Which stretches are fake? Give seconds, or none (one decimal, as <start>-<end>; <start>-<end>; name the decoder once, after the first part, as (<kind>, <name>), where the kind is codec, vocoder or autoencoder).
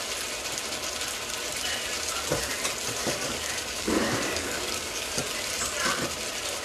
3.0-5.1 (codec, DAC)